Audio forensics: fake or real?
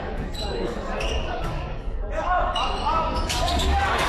fake